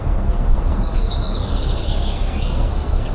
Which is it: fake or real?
fake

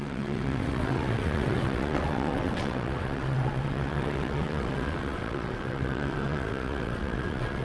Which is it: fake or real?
fake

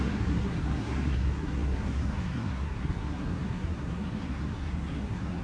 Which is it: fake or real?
fake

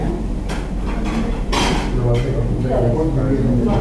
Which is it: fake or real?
real